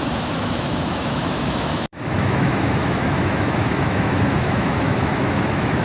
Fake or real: fake